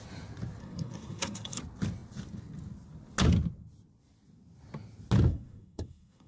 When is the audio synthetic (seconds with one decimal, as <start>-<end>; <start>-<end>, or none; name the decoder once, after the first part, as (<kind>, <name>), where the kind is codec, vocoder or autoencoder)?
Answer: 0.6-1.6 (codec, SNAC); 5.3-6.3